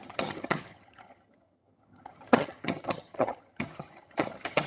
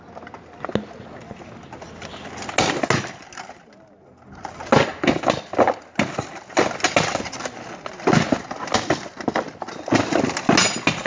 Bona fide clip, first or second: second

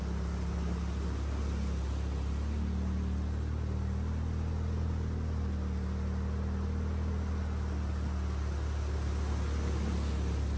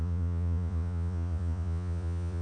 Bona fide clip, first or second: first